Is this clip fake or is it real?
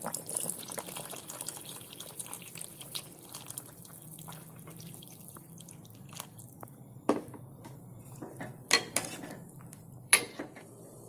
fake